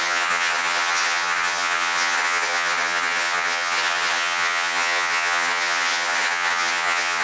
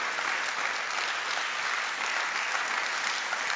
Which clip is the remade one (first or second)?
first